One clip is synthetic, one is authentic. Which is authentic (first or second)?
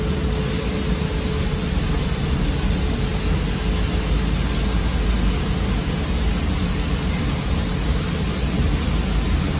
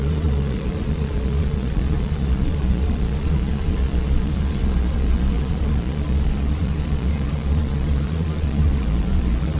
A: first